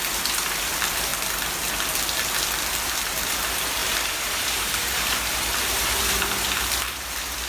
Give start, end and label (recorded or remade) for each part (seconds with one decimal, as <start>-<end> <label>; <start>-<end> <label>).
0.0-1.1 remade; 1.1-2.8 recorded; 2.8-7.5 remade